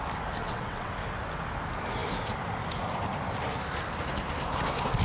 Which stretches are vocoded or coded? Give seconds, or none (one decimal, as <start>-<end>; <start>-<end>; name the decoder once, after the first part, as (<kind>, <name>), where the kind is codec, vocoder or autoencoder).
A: 0.4-0.9 (vocoder, WaveNeXt)